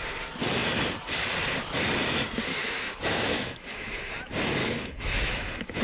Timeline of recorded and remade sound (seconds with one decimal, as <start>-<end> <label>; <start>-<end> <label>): 0.0-2.5 recorded; 2.5-4.1 remade; 4.1-4.6 recorded; 4.6-5.8 remade